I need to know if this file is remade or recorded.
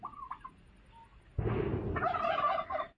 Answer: recorded